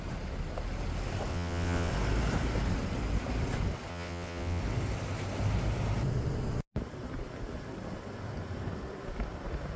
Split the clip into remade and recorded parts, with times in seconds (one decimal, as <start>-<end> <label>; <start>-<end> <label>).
0.0-1.3 recorded; 1.3-1.9 remade; 1.9-3.9 recorded; 3.9-4.6 remade; 4.6-9.8 recorded